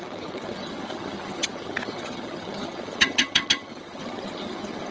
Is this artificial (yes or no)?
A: yes